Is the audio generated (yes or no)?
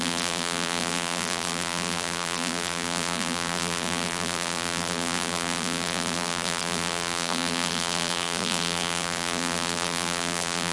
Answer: yes